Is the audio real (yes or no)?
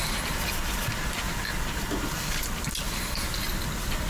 yes